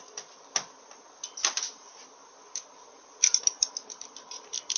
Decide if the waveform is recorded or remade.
remade